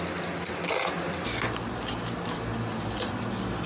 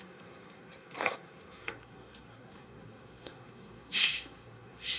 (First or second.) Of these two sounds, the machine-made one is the second